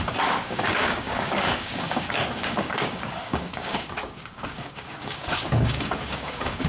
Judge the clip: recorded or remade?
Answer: remade